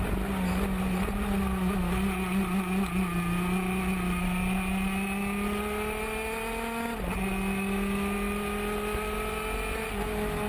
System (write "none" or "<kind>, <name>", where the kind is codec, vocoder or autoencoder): none